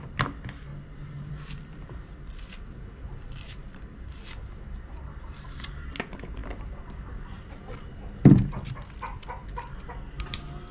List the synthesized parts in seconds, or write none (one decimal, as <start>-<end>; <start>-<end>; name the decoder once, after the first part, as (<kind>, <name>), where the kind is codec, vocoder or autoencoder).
0.7-1.3 (vocoder, BigVGAN v2); 3.6-4.2